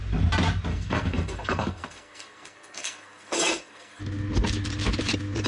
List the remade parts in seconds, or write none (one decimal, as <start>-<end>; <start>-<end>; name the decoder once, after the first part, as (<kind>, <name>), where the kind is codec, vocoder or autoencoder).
0.7-4.0 (codec, SNAC)